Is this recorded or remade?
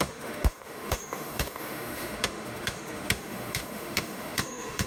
remade